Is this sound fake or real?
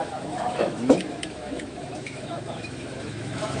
fake